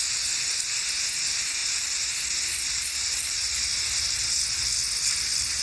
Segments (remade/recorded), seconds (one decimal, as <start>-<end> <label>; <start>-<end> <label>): 0.0-5.6 recorded